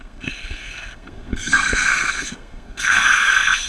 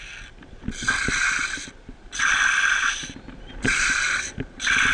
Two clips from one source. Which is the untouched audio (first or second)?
second